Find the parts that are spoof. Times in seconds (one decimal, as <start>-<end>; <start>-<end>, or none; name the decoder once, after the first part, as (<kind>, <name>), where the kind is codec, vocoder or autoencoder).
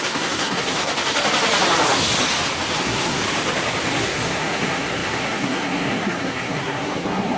0.0-0.9 (codec, SNAC); 2.8-3.2; 4.0-7.4